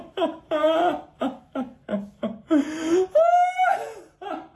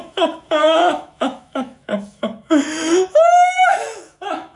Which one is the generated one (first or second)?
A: second